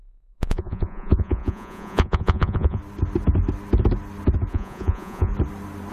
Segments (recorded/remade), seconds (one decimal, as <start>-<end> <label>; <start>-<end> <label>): 0.0-2.8 remade; 2.8-4.5 recorded; 4.5-5.3 remade; 5.3-5.9 recorded